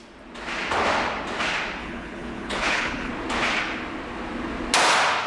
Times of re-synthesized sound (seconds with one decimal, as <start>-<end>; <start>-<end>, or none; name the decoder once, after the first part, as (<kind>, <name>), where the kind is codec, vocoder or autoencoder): 1.8-3.1 (codec, HILCodec)